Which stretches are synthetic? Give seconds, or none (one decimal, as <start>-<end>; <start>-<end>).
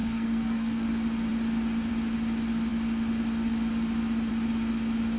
0.0-0.9